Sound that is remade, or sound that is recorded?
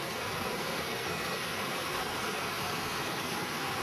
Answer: remade